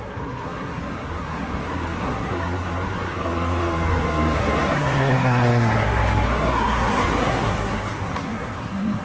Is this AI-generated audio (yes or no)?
yes